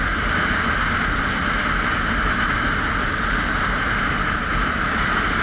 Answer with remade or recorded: recorded